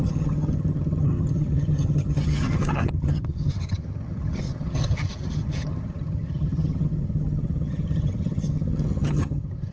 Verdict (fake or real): fake